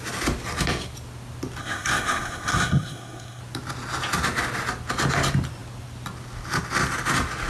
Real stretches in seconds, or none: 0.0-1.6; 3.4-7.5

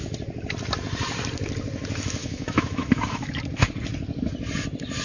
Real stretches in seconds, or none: 0.0-2.2; 3.3-5.0

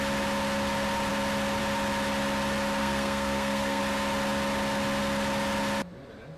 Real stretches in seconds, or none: 0.0-2.8; 3.8-6.4

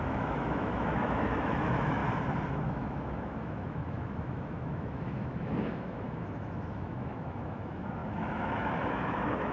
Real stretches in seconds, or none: 2.0-2.5

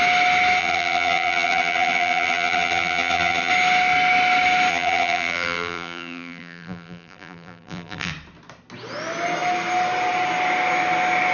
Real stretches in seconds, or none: 0.0-0.6; 3.5-4.7; 8.1-11.3

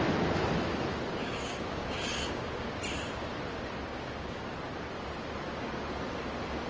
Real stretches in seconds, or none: 0.0-1.2; 2.8-3.9; 4.4-6.7